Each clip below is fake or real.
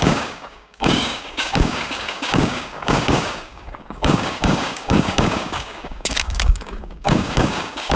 fake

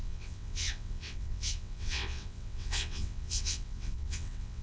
fake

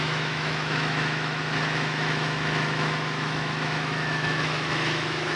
fake